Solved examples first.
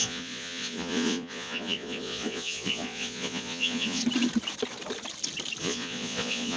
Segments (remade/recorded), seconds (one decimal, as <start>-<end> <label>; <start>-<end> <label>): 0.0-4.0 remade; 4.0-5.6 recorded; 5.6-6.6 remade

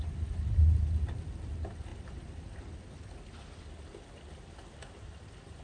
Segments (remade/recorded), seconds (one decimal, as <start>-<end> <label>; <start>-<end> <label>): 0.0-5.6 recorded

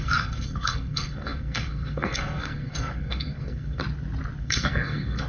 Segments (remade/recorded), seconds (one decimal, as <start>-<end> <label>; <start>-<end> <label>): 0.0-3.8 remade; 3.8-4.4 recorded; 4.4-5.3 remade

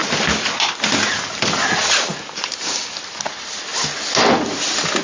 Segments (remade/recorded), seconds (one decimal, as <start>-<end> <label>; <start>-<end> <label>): 0.0-5.0 recorded

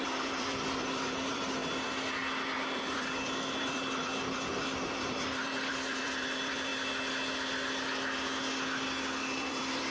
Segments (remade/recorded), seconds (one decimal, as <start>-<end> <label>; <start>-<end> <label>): 0.0-6.7 remade; 6.7-9.0 recorded; 9.0-9.9 remade

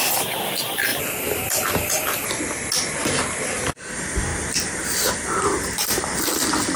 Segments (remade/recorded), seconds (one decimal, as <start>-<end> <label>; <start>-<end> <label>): 0.0-0.9 recorded; 0.9-2.4 remade; 2.4-6.8 recorded

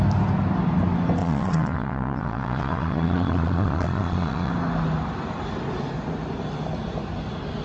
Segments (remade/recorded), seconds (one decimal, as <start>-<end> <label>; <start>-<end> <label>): 0.0-1.2 recorded; 1.2-4.5 remade; 4.5-7.6 recorded

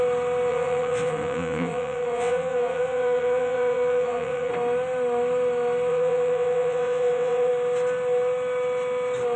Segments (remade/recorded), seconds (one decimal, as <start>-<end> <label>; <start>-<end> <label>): 0.0-0.5 recorded; 0.5-4.5 remade; 4.5-5.9 recorded; 5.9-7.5 remade; 7.5-9.4 recorded